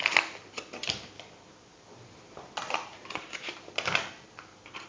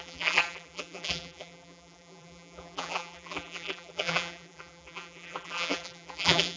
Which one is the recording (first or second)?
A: first